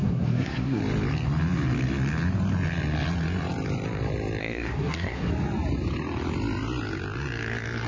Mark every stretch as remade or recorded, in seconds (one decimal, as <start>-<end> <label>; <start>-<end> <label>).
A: 0.0-0.8 remade; 0.8-4.4 recorded; 4.4-5.3 remade; 5.3-7.9 recorded